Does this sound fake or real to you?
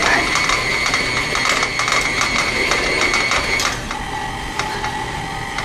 real